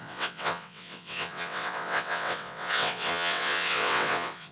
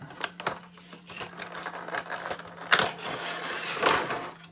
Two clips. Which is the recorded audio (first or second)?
second